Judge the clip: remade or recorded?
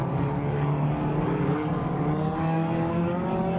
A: remade